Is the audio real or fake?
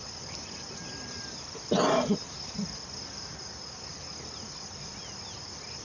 real